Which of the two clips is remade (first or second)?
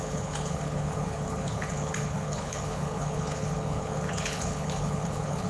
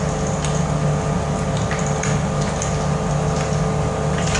first